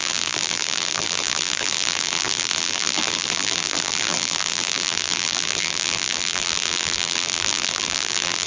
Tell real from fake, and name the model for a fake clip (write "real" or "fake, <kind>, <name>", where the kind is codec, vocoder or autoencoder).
fake, vocoder, BigVGAN v2